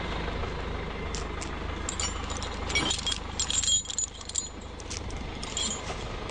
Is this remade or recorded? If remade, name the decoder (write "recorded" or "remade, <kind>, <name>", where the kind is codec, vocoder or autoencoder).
recorded